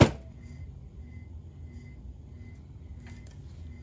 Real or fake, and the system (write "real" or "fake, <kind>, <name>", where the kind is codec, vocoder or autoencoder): real